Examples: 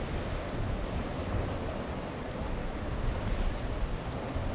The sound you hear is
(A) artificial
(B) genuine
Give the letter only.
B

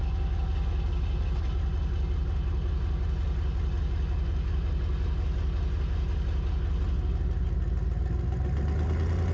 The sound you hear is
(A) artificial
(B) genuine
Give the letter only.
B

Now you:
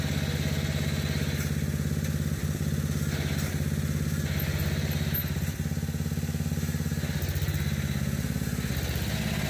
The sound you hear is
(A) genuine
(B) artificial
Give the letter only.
A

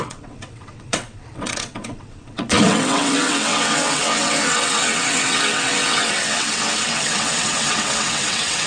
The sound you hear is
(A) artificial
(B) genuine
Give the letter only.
A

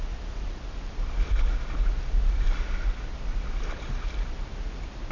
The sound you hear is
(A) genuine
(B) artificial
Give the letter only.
A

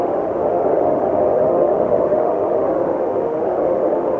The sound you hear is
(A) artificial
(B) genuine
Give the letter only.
A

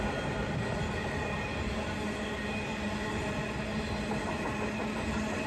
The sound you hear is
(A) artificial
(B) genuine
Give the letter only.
B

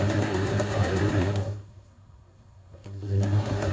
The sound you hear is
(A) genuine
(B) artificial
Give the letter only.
B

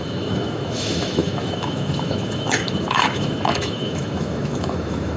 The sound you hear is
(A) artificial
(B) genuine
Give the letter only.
A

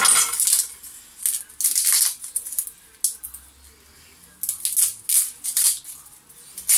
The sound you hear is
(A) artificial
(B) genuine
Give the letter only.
B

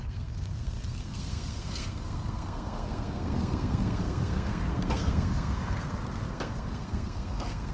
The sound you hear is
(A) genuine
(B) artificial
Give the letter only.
B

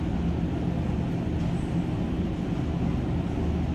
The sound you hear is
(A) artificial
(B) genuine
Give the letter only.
B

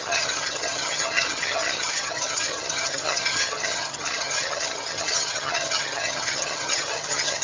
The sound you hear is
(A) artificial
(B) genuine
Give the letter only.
A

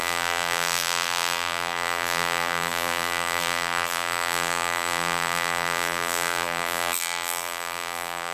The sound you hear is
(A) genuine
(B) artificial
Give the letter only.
B